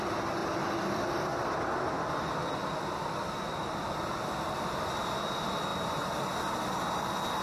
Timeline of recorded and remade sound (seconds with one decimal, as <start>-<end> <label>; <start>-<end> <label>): 0.0-0.4 recorded; 0.4-1.5 remade; 1.5-3.0 recorded; 3.0-5.0 remade; 5.0-7.4 recorded